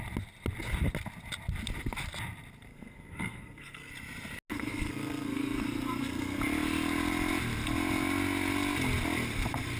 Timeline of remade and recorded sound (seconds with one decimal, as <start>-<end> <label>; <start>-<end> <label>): 0.0-2.7 recorded; 2.7-3.9 remade; 3.9-4.5 recorded; 4.5-6.4 remade; 6.4-9.8 recorded